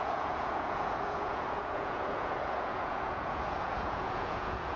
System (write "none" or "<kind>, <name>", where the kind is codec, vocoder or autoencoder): vocoder, Vocos